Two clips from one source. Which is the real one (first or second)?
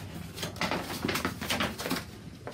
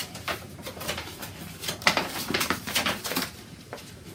first